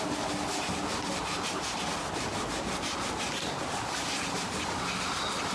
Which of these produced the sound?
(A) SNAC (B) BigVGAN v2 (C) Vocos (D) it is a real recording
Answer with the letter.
D